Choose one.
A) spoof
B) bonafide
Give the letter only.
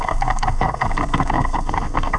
A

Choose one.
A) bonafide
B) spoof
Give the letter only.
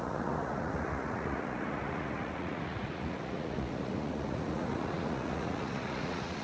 B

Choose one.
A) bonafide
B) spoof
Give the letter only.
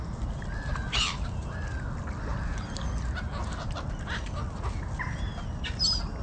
A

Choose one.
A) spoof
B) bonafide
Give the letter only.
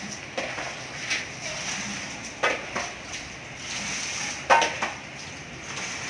B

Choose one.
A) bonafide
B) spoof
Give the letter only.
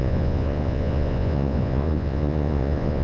B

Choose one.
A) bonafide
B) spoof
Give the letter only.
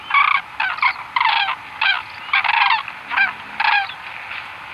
A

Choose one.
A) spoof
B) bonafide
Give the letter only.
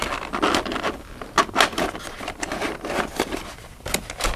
B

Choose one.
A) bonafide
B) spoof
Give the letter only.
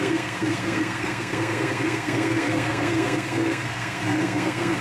B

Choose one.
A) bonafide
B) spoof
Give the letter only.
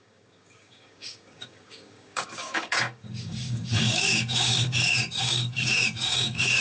B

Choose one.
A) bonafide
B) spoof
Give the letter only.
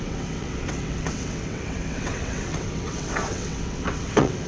B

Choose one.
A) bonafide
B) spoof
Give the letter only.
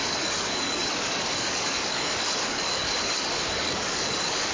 B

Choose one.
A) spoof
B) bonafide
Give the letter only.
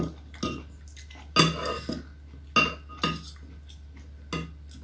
B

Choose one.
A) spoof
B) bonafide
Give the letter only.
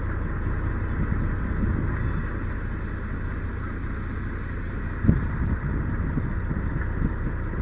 B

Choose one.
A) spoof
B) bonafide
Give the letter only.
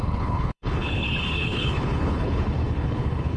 A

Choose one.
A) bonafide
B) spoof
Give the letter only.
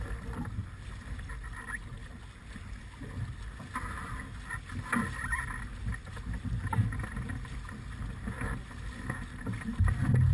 A